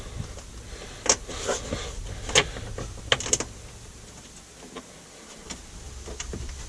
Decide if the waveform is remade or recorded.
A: recorded